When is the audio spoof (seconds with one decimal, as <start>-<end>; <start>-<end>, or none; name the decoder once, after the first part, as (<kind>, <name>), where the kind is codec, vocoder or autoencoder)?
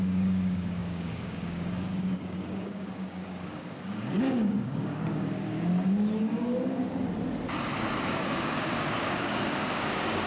0.0-7.0 (codec, DAC); 8.0-10.3